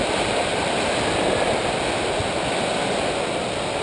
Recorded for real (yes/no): yes